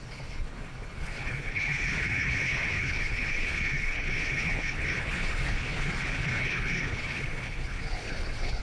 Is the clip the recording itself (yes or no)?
no